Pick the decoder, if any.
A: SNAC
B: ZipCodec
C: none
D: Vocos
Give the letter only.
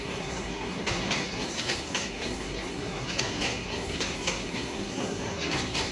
A